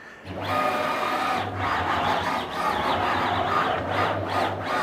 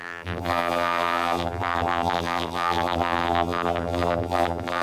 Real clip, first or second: first